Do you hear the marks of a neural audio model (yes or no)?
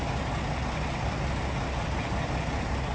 no